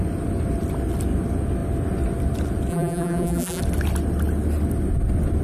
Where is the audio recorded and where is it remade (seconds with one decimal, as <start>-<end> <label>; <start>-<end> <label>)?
0.0-2.7 recorded; 2.7-3.6 remade; 3.6-5.4 recorded